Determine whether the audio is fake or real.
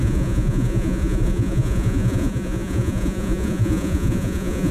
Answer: fake